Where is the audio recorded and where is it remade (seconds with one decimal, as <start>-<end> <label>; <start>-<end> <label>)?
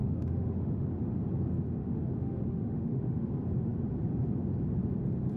0.0-0.9 remade; 0.9-1.8 recorded; 1.8-3.3 remade; 3.3-5.4 recorded